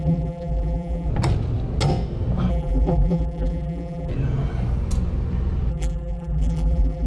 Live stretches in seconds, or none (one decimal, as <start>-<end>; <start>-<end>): 1.1-2.5; 4.1-5.7